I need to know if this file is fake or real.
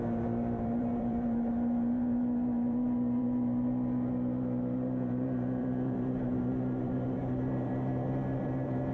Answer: fake